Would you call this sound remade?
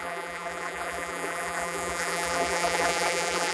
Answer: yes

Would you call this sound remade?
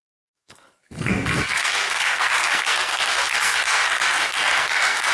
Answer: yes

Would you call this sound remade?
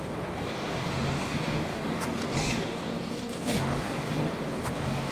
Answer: yes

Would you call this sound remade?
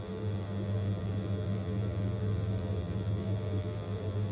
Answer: yes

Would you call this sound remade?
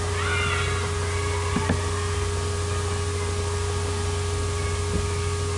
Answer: no